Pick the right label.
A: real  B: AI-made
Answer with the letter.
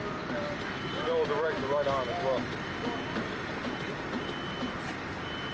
A